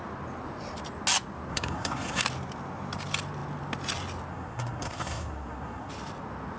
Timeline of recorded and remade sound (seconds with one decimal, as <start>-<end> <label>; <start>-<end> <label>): 0.0-1.5 recorded; 1.5-2.2 remade; 2.2-4.3 recorded; 4.3-5.9 remade; 5.9-6.6 recorded